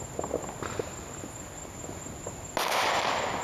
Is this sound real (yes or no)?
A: yes